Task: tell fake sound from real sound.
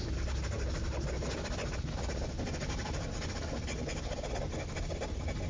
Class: real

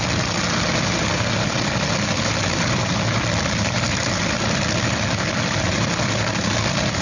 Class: real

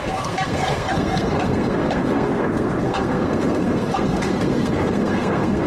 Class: fake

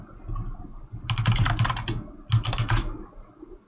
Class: real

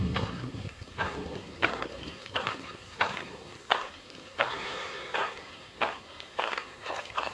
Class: fake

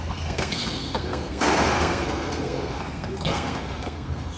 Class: fake